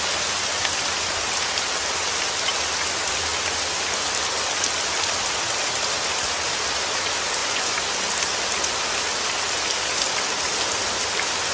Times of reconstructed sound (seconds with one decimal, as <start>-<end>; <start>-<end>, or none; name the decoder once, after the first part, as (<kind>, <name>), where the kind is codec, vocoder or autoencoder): 7.4-7.9 (vocoder, Vocos)